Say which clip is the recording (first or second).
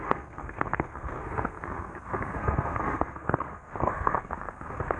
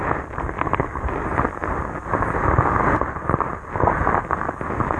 second